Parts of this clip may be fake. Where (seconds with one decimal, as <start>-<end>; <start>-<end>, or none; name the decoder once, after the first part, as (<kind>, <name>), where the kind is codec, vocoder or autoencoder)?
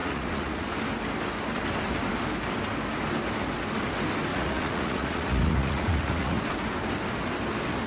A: 0.0-0.7 (vocoder, Vocos); 4.3-6.4